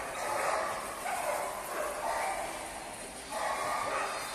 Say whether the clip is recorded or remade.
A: recorded